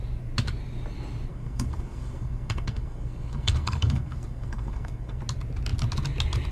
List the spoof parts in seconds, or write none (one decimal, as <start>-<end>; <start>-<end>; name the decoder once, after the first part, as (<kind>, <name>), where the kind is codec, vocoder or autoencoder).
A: 1.3-5.2 (codec, SNAC)

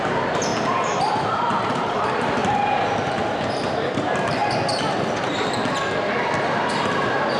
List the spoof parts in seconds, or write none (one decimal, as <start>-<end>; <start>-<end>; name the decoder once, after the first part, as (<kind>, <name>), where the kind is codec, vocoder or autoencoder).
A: 0.0-0.5 (vocoder, BigVGAN v2); 1.2-4.4; 6.7-7.4

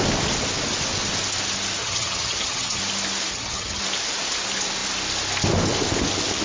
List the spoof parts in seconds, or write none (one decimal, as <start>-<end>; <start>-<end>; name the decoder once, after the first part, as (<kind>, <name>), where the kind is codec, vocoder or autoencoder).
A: 1.8-2.8 (vocoder, HiFi-GAN); 3.3-3.8

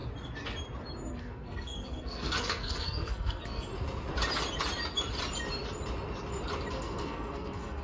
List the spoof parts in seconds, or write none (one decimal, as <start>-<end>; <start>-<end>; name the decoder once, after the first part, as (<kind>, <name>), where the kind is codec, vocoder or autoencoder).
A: 1.1-3.7 (codec, SNAC); 6.7-7.8